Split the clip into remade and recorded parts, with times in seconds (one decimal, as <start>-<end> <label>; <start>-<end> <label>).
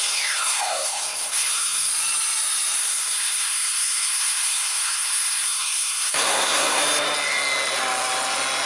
0.0-1.9 remade; 1.9-2.8 recorded; 2.8-6.8 remade; 6.8-8.7 recorded